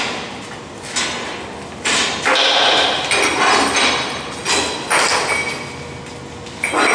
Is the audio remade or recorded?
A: recorded